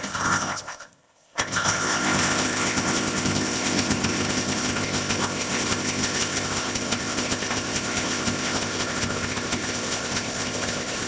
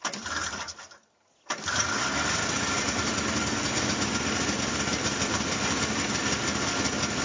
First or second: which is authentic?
second